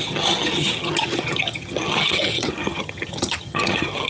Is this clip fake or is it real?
fake